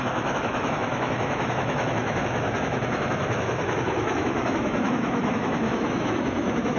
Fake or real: fake